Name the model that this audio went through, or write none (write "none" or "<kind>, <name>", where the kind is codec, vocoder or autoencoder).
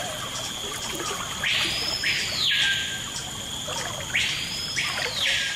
none